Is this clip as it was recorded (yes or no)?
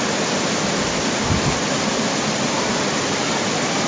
yes